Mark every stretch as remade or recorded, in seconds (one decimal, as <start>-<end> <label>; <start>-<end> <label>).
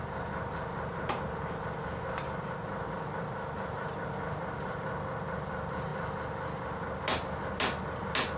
0.0-8.4 recorded